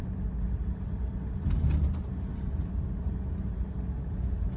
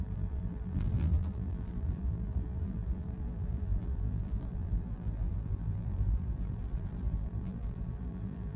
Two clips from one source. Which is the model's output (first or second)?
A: second